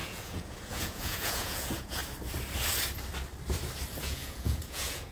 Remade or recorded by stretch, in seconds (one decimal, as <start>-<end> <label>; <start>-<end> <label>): 0.0-2.0 remade; 2.0-4.0 recorded; 4.0-5.1 remade